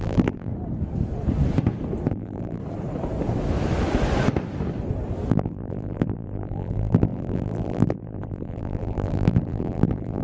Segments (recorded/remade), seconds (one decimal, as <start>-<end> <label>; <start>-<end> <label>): 0.0-0.5 remade; 0.5-2.1 recorded; 2.1-2.6 remade; 2.6-5.3 recorded; 5.3-10.2 remade